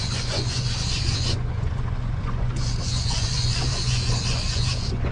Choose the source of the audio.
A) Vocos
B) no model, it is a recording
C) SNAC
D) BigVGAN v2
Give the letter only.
A